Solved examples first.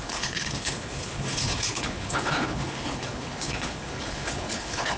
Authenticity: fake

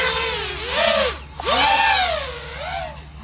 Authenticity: real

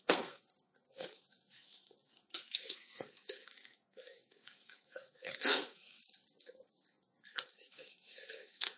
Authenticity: fake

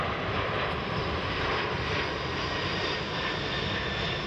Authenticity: real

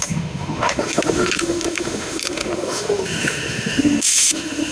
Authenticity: fake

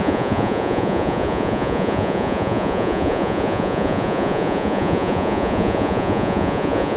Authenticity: fake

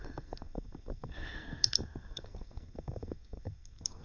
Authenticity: fake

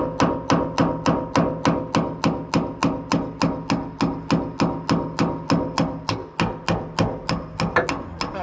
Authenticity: real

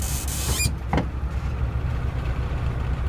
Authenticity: real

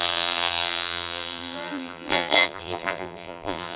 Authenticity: fake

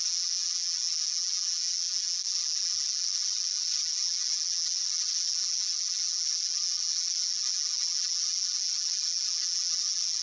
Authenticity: fake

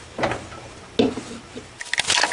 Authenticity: real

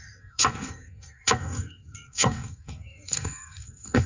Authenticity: fake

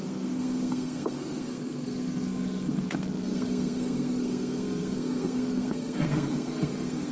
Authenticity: fake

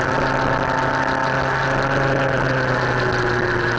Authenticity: real